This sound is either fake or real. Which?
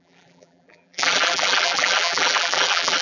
fake